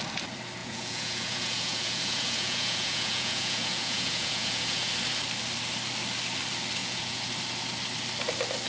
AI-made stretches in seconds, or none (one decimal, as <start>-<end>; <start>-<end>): 0.6-4.9; 6.8-7.3